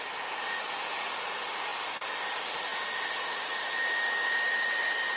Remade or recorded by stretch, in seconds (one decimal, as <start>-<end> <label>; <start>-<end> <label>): 0.0-5.2 recorded